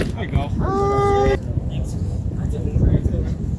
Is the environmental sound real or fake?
real